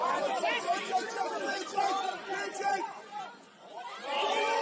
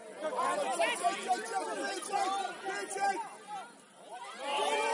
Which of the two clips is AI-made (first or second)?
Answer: first